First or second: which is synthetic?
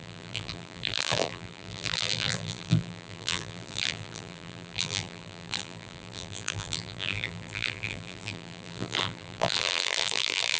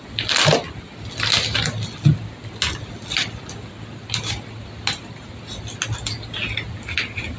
first